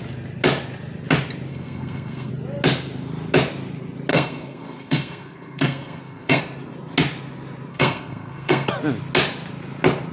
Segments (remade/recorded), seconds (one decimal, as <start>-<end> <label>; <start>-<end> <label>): 0.0-1.5 recorded; 1.5-2.3 remade; 2.3-4.1 recorded; 4.1-6.4 remade; 6.4-7.7 recorded; 7.7-8.7 remade; 8.7-10.1 recorded